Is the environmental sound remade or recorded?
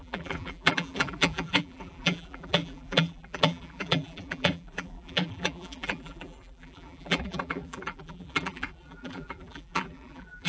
remade